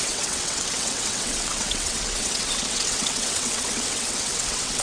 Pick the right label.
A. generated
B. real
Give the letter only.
A